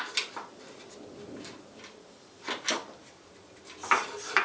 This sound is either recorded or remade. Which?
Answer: recorded